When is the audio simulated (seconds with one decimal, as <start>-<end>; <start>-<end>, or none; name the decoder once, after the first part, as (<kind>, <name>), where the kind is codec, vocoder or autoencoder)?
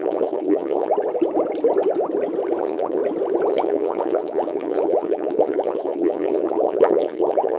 0.0-0.9 (vocoder, Vocos); 2.6-3.0; 3.5-7.6